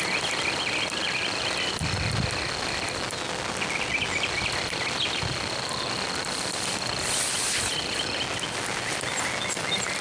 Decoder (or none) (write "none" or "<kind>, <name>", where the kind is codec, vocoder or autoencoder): none